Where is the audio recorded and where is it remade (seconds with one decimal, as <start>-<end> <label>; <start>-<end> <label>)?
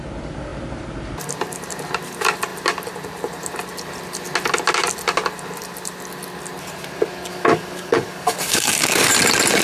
0.0-7.3 recorded; 7.3-9.1 remade; 9.1-9.6 recorded